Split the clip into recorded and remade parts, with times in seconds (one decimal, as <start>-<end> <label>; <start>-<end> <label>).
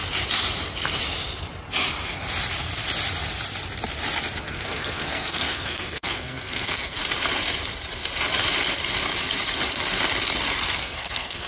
0.0-4.4 recorded; 4.4-7.0 remade; 7.0-10.8 recorded; 10.8-11.5 remade